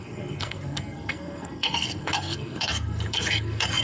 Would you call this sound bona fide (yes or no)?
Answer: no